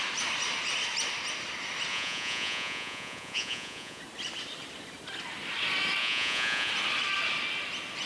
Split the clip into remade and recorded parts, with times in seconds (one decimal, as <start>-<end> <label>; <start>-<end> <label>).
0.0-1.9 recorded; 1.9-4.0 remade; 4.0-6.0 recorded; 6.0-6.7 remade; 6.7-8.1 recorded